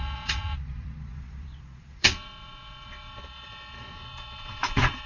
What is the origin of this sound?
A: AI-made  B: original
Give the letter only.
A